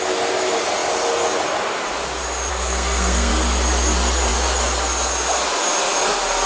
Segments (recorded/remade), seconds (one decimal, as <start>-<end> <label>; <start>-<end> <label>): 0.0-2.5 recorded; 2.5-3.3 remade; 3.3-6.5 recorded